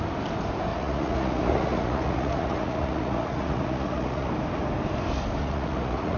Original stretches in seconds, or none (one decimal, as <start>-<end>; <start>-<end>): 0.0-0.7; 4.3-5.4